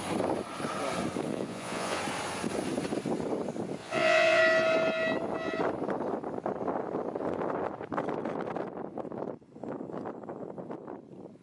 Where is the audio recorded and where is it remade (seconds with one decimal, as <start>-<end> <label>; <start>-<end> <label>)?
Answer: 0.0-1.3 recorded; 1.3-2.0 remade; 2.0-3.8 recorded; 3.8-4.4 remade; 4.4-11.4 recorded